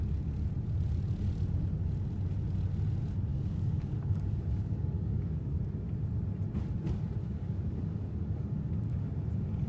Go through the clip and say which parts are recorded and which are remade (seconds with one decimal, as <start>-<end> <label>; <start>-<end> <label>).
0.0-3.3 recorded; 3.3-5.6 remade; 5.6-7.2 recorded; 7.2-9.1 remade; 9.1-9.7 recorded